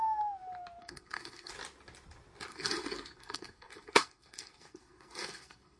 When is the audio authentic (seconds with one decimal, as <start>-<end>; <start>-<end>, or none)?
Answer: 0.0-0.8; 1.5-2.5